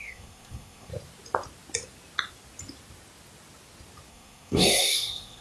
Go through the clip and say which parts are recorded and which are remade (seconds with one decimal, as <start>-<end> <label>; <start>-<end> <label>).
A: 0.0-0.9 remade; 0.9-4.1 recorded; 4.1-5.4 remade